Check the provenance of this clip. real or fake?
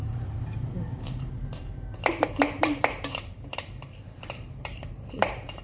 fake